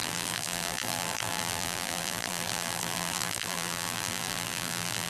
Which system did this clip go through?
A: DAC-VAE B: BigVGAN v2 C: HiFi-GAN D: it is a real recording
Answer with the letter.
B